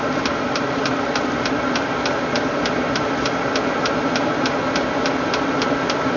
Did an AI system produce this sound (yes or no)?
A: no